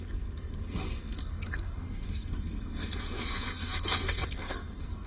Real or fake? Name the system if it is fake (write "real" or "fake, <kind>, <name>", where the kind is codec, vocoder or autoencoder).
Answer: fake, codec, SNAC